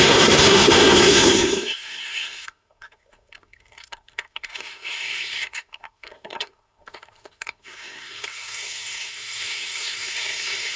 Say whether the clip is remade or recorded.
remade